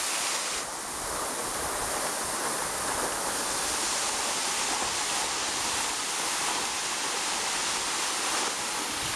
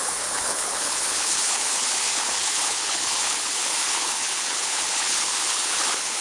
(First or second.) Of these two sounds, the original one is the first